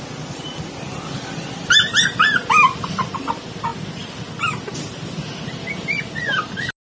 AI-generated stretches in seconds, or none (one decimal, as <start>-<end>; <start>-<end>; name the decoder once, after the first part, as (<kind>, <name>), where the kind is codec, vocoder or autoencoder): none